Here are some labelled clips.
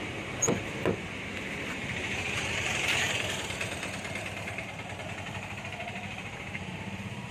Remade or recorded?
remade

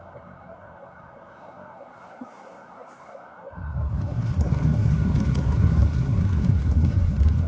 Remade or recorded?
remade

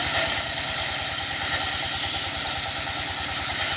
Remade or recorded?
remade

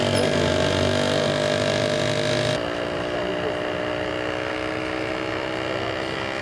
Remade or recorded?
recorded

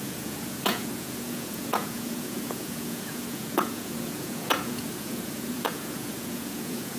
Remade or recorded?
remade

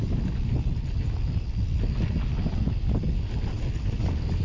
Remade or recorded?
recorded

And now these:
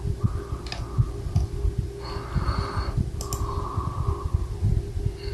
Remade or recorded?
recorded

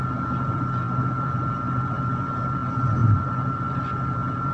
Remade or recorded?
recorded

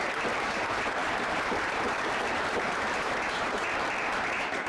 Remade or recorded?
remade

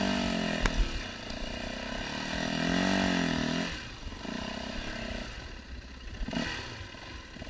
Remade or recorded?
recorded